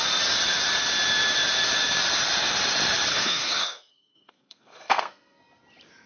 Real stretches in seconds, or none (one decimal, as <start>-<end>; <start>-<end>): 0.0-3.1; 5.4-6.1